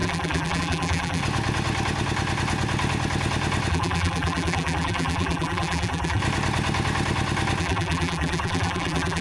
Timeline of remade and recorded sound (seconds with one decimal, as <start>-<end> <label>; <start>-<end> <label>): 0.0-1.2 remade; 1.2-3.7 recorded; 3.7-6.2 remade; 6.2-7.6 recorded; 7.6-9.2 remade